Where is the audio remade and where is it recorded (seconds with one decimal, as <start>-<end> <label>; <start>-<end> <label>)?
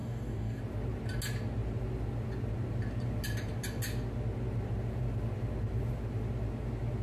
0.0-0.6 remade; 0.6-7.0 recorded